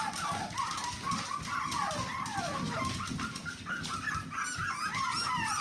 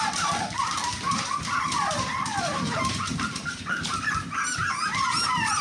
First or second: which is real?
first